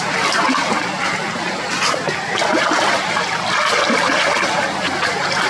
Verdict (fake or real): real